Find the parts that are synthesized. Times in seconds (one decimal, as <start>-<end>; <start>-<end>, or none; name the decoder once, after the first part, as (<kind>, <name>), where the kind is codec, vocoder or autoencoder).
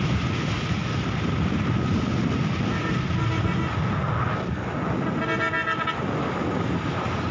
none